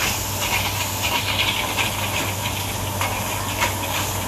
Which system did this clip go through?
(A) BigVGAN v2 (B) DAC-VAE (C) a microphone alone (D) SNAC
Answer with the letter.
C